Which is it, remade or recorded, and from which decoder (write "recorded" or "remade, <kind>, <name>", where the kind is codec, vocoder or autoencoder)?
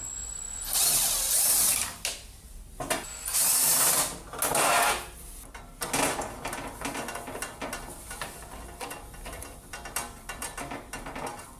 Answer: recorded